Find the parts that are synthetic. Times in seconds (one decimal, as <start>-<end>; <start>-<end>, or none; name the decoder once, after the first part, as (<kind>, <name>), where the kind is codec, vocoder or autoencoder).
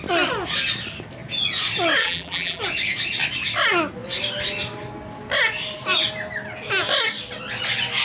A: 2.0-2.6 (vocoder, BigVGAN v2)